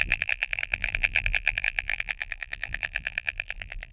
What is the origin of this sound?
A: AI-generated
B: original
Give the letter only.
A